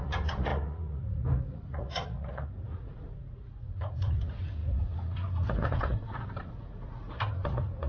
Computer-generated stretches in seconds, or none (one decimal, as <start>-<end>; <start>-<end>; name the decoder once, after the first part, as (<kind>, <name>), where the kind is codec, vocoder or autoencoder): 0.0-7.9 (vocoder, Vocos)

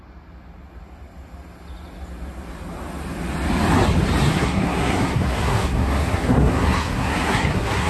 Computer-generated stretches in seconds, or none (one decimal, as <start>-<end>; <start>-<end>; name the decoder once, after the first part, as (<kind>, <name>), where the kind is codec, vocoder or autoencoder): 4.3-7.9 (codec, SNAC)

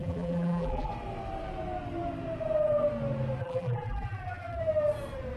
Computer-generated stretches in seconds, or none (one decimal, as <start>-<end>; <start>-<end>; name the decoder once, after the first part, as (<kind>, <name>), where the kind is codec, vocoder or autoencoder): 0.0-0.9 (vocoder, BigVGAN v2); 3.4-4.6

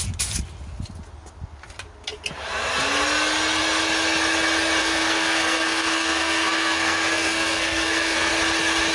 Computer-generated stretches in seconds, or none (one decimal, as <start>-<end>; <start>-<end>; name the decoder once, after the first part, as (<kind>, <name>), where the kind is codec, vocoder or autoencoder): 4.8-8.3 (codec, SNAC)

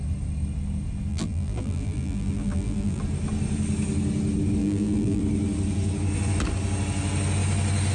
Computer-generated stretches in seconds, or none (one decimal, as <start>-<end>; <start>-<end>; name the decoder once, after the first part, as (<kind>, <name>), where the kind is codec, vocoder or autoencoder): 1.1-3.0 (vocoder, BigVGAN v2); 4.6-5.2

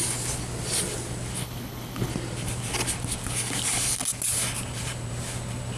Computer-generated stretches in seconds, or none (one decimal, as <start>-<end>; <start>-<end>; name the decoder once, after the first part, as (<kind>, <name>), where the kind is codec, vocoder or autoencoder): 1.4-2.1 (codec, HILCodec)

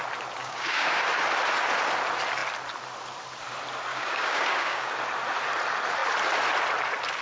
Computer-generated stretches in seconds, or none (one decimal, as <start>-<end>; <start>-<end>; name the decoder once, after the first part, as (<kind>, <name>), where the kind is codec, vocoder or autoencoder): 0.4-1.0 (codec, DAC); 3.9-4.9